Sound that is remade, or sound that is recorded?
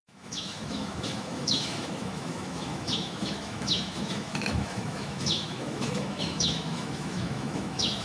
remade